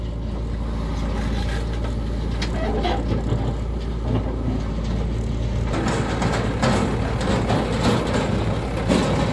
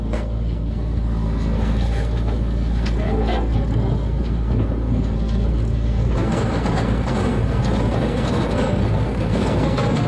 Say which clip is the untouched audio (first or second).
first